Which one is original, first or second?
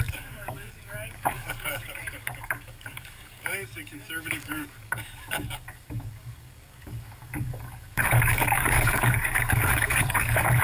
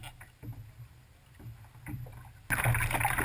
second